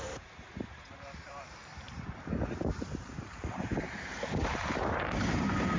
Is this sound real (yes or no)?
no